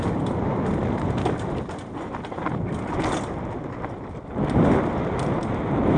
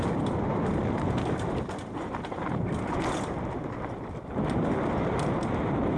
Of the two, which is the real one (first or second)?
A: first